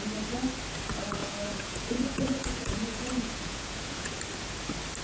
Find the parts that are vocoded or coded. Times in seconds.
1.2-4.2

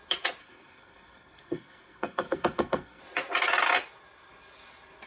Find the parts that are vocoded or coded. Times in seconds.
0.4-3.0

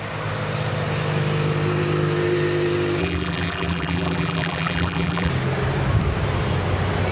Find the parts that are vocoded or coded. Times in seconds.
3.0-5.3

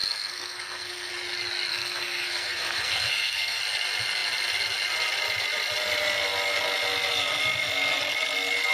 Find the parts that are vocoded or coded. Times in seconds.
0.0-1.1; 1.7-3.6

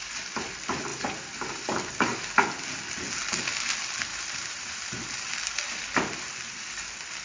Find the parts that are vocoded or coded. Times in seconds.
0.9-2.2; 4.1-4.8